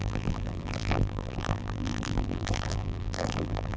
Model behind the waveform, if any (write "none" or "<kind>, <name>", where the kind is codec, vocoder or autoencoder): vocoder, BigVGAN v2